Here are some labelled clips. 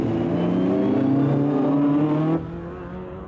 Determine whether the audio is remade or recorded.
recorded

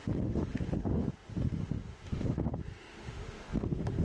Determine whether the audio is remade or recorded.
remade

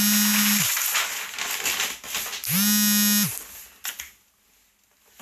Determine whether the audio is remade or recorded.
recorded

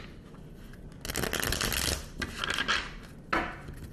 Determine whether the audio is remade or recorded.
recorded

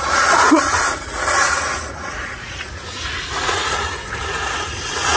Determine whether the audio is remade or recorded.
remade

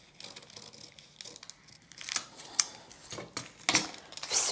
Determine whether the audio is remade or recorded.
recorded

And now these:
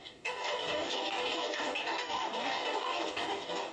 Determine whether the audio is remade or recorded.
remade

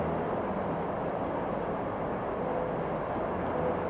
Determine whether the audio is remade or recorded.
recorded